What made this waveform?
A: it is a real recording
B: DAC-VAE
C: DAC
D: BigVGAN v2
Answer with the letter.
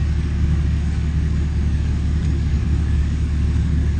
C